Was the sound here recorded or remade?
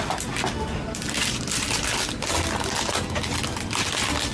recorded